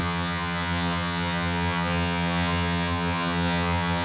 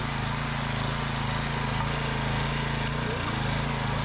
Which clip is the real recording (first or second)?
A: second